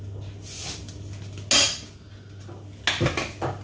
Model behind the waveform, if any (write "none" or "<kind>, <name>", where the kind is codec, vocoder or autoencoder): none